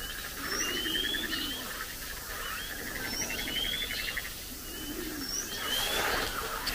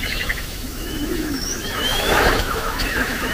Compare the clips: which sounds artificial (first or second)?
second